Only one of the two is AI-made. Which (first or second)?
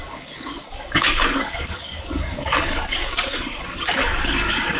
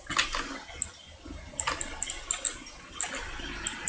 first